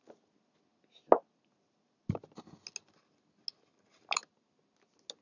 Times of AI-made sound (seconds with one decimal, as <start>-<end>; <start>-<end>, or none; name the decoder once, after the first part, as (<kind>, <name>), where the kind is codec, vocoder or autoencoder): none